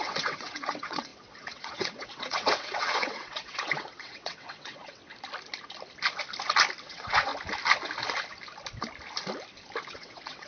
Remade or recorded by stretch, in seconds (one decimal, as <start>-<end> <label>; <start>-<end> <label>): 0.0-5.0 remade; 5.0-6.8 recorded; 6.8-7.3 remade; 7.3-9.9 recorded; 9.9-10.5 remade